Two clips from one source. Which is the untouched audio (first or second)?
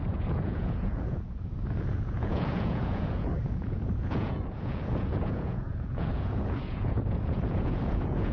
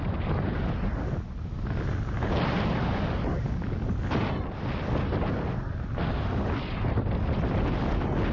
second